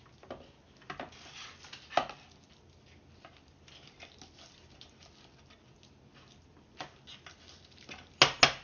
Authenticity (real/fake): real